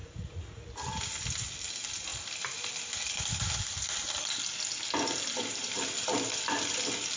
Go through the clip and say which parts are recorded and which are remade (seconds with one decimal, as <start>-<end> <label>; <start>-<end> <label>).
0.0-0.6 remade; 0.6-7.2 recorded